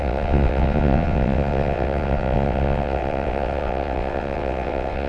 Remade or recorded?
remade